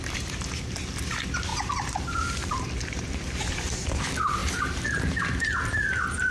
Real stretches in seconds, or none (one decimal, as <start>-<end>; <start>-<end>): 0.0-1.5; 4.0-6.3